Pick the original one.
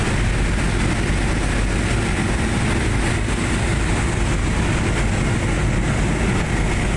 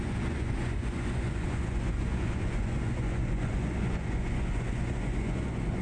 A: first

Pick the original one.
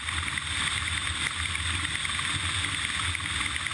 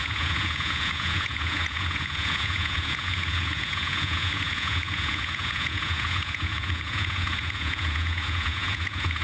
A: first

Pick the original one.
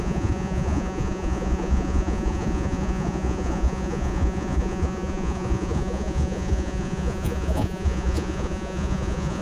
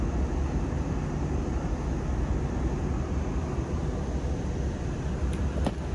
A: second